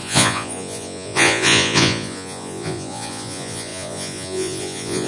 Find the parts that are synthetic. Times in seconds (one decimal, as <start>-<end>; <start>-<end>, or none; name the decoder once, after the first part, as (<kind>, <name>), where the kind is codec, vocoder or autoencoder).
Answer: 0.0-5.1 (vocoder, Vocos)